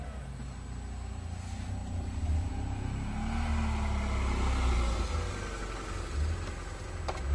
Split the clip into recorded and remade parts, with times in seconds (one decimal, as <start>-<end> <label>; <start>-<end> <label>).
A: 0.0-7.3 recorded